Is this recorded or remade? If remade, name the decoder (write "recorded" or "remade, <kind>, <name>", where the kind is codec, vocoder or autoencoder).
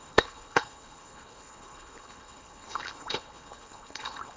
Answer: remade, codec, HILCodec